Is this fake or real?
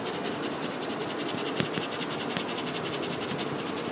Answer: real